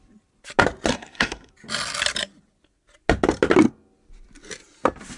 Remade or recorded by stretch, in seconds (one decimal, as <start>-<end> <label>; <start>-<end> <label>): 0.0-0.9 recorded; 0.9-1.5 remade; 1.5-5.2 recorded